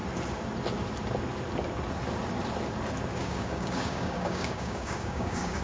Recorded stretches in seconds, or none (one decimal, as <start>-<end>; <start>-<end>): 0.0-3.1